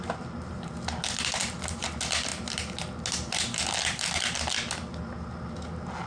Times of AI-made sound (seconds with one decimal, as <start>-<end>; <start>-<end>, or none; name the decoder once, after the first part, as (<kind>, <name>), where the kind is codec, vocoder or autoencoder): none